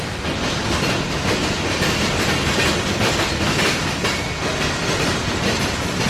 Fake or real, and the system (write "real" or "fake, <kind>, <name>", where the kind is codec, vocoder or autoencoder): fake, vocoder, BigVGAN v2